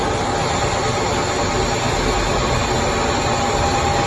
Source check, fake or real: real